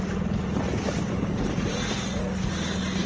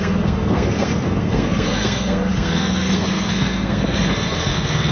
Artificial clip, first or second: second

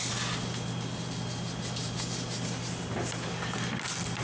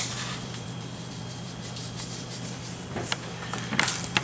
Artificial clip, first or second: second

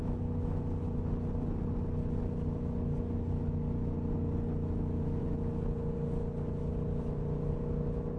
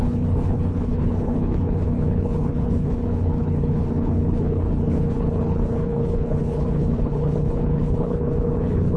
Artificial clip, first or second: second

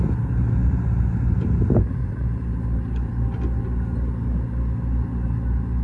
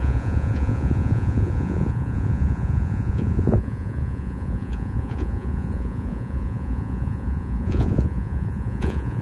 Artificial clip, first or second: second